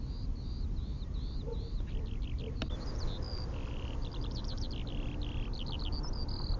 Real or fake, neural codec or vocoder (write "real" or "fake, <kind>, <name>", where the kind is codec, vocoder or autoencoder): real